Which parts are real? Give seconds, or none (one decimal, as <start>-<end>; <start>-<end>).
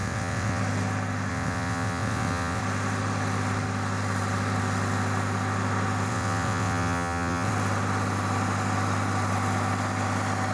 0.6-1.3; 2.6-6.1; 7.5-10.5